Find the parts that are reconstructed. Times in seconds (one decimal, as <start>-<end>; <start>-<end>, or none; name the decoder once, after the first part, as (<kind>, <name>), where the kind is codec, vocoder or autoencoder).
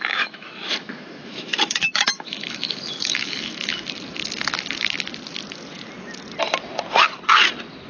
0.0-3.7 (autoencoder, DAC-VAE)